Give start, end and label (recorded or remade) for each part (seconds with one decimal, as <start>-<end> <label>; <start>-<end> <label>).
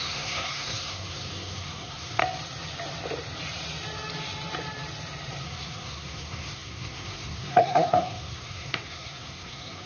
0.0-2.2 remade; 2.2-5.4 recorded; 5.4-9.9 remade